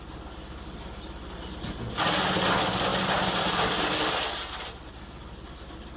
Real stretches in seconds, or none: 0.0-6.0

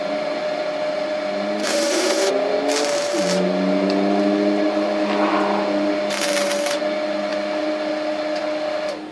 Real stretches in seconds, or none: 0.0-1.6; 2.3-9.1

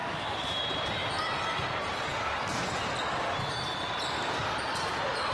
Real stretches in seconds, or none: 0.6-5.3

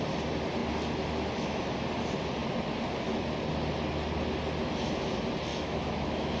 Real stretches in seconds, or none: 0.0-5.5

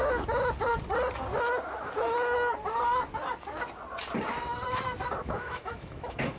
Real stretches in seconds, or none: 0.0-5.2

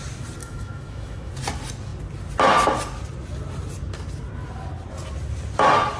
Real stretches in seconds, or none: 0.0-0.4; 1.3-6.0